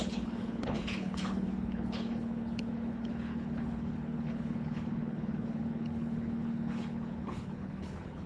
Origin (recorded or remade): remade